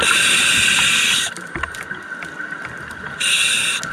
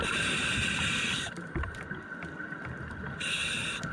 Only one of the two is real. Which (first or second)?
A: first